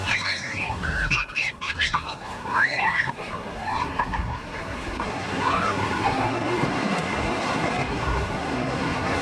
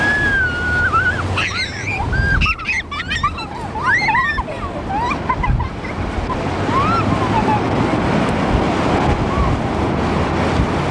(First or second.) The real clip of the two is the second